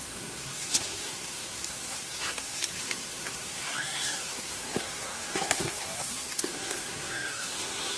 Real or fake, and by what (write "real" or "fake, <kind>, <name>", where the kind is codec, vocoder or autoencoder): fake, codec, SNAC